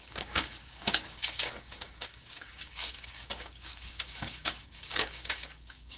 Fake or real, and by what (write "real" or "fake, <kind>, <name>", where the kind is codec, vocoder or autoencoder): fake, codec, DAC